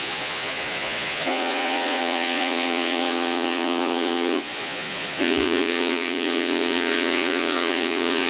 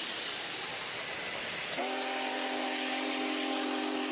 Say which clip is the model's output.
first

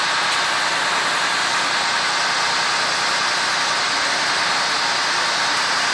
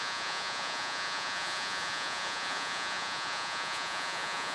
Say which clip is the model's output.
second